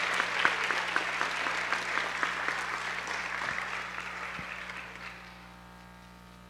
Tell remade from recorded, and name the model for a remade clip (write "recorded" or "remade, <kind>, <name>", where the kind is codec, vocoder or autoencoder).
recorded